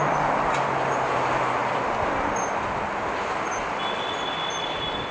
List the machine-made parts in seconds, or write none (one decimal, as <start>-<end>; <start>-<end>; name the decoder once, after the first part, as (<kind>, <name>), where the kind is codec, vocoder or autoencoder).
none